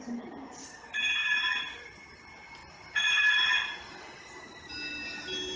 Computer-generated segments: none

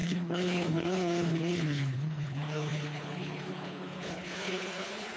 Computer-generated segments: 0.0-5.2 (codec, HILCodec)

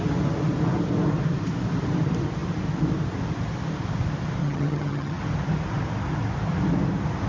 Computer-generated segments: 4.4-5.2 (vocoder, HiFi-GAN)

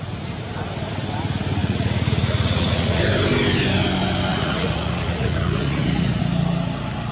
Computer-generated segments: 1.6-3.0 (vocoder, Vocos); 4.3-6.2

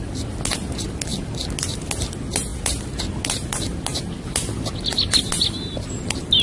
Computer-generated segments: none

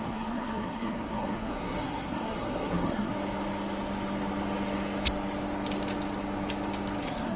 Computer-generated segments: 0.0-3.1 (codec, SNAC); 7.0-7.4